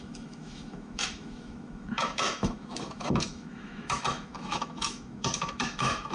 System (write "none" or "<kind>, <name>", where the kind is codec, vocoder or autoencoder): autoencoder, DAC-VAE